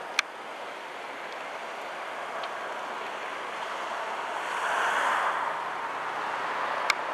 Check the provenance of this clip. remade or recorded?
recorded